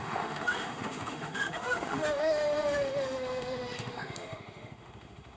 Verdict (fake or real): fake